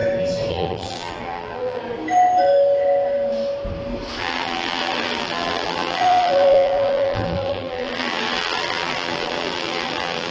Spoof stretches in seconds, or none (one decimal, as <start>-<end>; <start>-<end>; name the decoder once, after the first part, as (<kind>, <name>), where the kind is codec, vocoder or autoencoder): 0.5-1.8 (vocoder, BigVGAN v2); 4.2-10.3